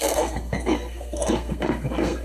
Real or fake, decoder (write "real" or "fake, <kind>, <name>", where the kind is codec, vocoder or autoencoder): fake, codec, SNAC